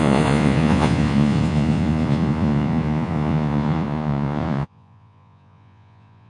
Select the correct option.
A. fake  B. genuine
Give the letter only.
A